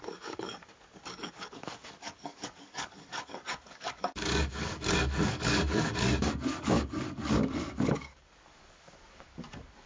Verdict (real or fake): fake